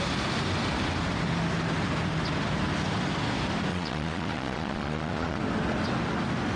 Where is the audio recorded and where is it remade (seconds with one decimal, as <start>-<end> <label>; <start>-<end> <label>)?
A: 0.0-3.7 recorded; 3.7-5.4 remade; 5.4-6.6 recorded